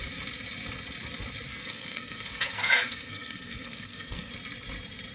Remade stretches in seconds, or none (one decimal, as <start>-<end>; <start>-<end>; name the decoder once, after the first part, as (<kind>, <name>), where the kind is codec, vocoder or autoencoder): 1.5-4.3 (codec, SNAC)